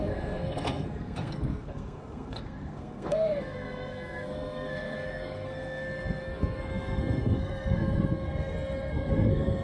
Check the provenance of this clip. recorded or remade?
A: remade